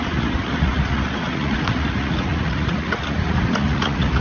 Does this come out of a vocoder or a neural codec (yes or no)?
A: yes